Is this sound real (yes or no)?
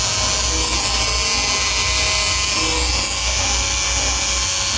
yes